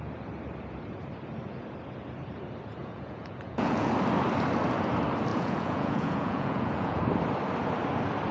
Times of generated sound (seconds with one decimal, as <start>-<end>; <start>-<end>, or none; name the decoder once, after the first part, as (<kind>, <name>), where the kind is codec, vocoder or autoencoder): 2.8-3.9 (vocoder, Vocos); 5.3-7.0